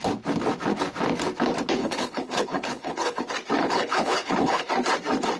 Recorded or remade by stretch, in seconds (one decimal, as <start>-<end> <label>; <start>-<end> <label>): 0.0-1.8 recorded; 1.8-3.2 remade; 3.2-3.6 recorded; 3.6-4.7 remade; 4.7-5.4 recorded